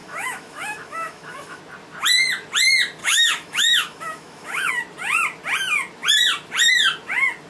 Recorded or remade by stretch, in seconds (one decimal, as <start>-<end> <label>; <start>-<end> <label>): 0.0-1.6 remade; 1.6-3.0 recorded; 3.0-4.7 remade; 4.7-7.5 recorded